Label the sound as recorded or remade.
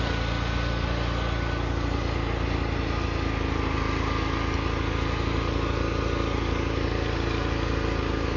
recorded